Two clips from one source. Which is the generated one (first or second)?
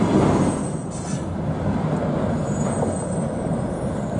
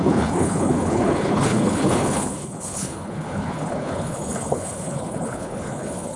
second